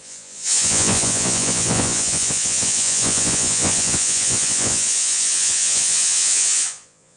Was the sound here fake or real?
fake